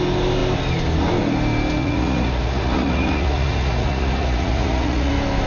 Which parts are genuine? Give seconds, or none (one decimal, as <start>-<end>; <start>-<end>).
0.0-1.8; 5.1-5.5